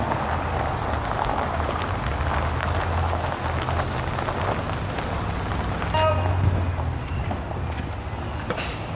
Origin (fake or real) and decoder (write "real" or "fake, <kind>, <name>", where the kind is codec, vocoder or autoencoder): real